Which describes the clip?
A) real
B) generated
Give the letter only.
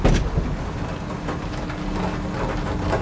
A